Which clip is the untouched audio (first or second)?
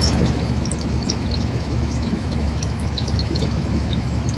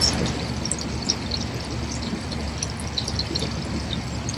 second